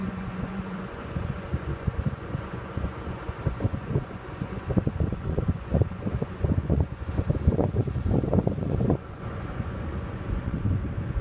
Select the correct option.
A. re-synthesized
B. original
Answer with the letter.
A